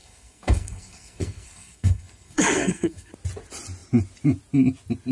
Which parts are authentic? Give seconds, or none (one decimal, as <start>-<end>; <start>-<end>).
3.1-5.1